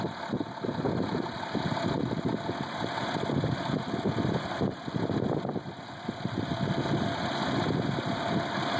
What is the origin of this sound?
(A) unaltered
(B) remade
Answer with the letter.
A